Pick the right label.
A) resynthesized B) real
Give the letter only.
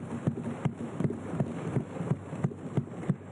B